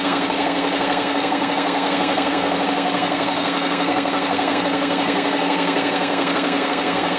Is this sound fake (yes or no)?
yes